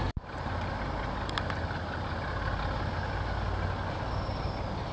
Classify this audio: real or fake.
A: real